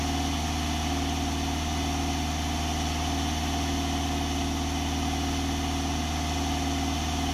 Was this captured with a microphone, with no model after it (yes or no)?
yes